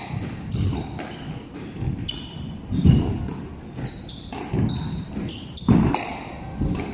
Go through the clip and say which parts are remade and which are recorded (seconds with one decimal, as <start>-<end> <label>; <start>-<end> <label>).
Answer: 0.0-6.9 recorded